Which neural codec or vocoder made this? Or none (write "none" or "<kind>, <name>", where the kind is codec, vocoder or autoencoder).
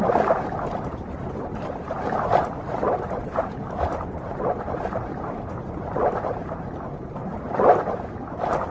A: vocoder, BigVGAN v2